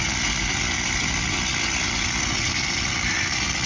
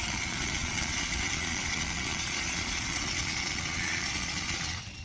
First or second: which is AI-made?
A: second